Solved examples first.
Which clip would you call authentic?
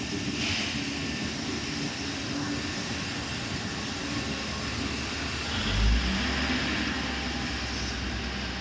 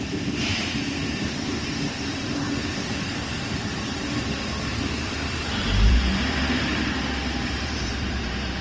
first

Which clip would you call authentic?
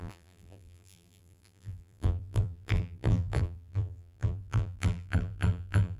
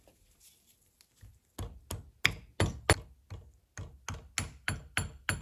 second